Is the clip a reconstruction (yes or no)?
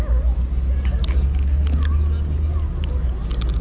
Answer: no